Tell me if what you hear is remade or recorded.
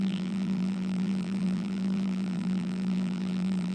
remade